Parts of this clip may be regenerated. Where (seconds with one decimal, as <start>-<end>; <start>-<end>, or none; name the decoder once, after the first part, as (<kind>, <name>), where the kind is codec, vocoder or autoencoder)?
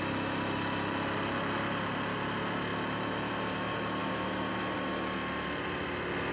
none